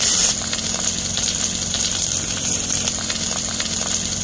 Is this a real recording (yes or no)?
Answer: yes